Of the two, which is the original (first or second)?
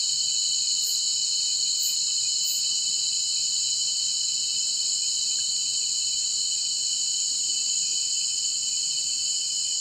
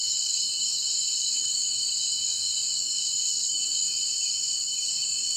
first